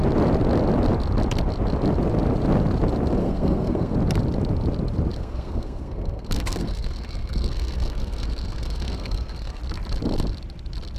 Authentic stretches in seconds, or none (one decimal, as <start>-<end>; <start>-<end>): 0.0-3.2; 3.9-5.1; 9.6-11.0

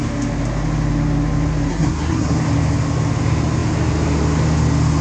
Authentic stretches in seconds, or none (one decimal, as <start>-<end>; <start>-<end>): 0.0-1.7; 2.4-5.0

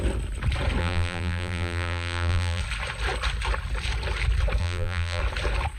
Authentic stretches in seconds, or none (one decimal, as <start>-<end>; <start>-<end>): 0.0-0.8; 2.6-4.6; 5.2-5.8

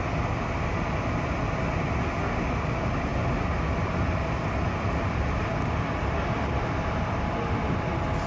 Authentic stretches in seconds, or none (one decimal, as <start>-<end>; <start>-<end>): 0.0-3.1; 7.6-8.3

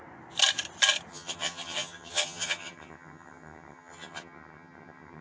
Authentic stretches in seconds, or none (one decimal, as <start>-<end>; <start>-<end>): 0.0-1.1

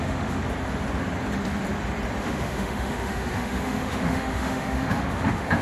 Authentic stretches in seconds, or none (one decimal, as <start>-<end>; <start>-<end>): 0.4-2.2

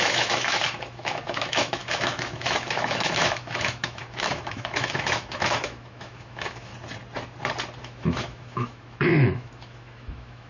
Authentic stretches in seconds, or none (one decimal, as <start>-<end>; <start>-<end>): 6.7-7.8

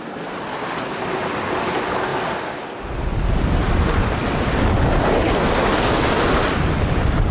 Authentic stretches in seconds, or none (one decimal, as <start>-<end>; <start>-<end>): 0.0-7.3